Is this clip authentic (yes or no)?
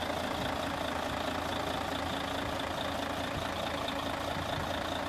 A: yes